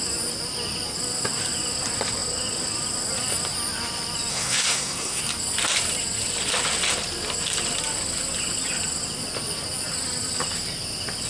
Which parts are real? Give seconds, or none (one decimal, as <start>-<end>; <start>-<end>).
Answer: 0.0-4.3; 5.2-11.3